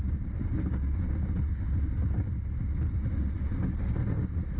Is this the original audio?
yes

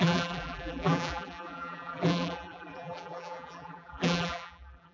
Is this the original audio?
no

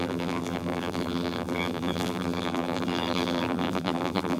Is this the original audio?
no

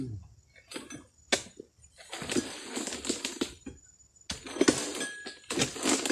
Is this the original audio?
yes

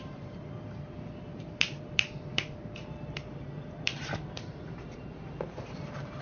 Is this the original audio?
no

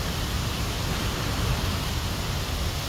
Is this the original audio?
yes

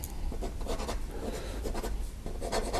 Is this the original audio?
no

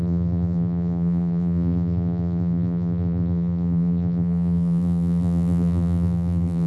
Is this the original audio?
no